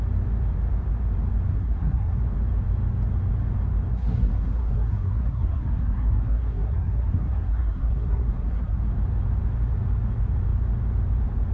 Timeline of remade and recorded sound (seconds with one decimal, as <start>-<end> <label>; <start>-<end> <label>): 0.0-1.5 recorded; 1.5-2.2 remade; 2.2-3.9 recorded; 3.9-8.8 remade; 8.8-11.5 recorded